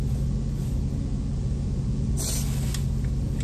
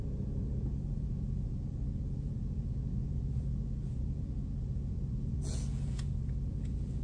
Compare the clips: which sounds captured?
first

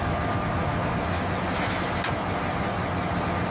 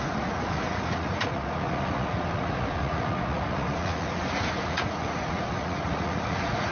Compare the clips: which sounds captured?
first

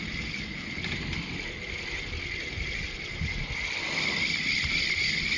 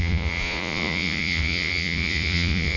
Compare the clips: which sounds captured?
first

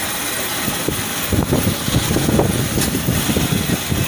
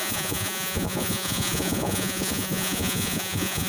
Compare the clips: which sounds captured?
first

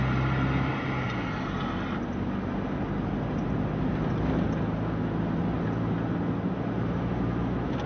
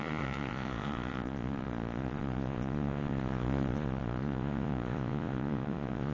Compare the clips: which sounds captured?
first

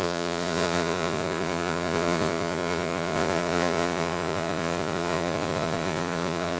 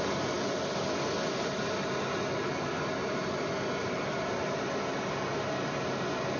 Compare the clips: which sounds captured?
second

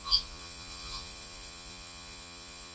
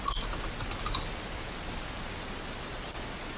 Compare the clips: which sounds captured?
second